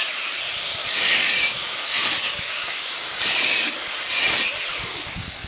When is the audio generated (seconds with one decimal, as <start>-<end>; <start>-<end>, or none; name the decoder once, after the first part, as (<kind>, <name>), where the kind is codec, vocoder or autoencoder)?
0.8-3.9 (codec, DAC); 4.7-5.5